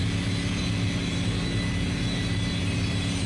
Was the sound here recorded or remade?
recorded